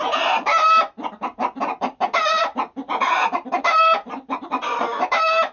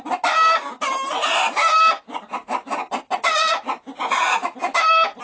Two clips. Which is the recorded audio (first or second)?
second